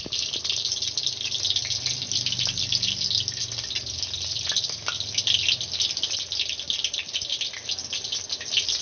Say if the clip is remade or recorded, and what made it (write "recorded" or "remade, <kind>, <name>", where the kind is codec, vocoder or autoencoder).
recorded